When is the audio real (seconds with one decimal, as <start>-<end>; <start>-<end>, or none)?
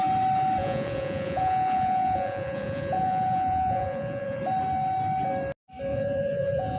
0.0-0.6; 4.4-5.9